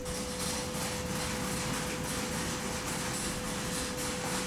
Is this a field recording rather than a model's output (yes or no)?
yes